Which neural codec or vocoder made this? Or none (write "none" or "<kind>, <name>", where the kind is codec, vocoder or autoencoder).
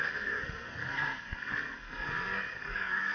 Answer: codec, SNAC